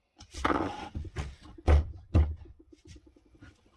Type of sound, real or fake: fake